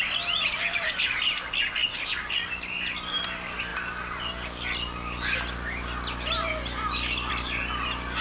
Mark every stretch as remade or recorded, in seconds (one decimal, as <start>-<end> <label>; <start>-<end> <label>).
0.0-8.2 recorded